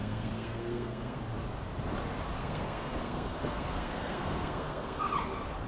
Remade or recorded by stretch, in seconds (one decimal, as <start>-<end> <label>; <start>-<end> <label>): 0.0-1.2 remade; 1.2-2.4 recorded; 2.4-5.1 remade; 5.1-5.7 recorded